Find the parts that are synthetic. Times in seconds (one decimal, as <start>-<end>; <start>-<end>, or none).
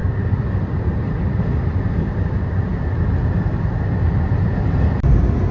0.0-2.2